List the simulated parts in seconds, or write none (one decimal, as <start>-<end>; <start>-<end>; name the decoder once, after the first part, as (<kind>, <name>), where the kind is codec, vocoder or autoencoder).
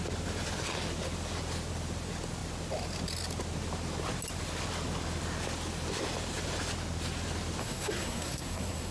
7.6-8.9 (codec, SNAC)